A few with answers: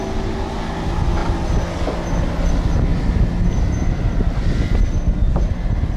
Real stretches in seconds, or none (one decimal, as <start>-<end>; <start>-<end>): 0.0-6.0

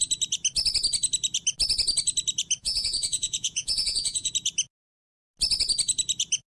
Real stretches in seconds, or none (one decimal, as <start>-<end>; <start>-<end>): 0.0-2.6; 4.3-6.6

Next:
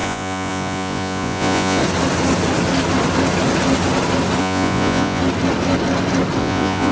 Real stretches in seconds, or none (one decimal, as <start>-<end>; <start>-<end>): 1.8-4.4; 5.2-6.4